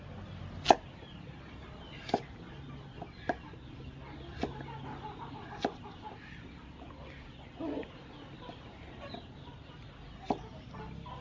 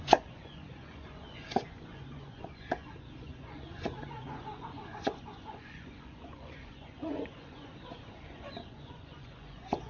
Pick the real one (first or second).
first